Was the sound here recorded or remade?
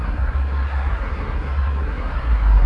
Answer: remade